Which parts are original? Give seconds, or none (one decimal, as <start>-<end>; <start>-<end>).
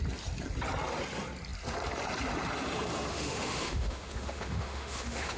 0.0-3.1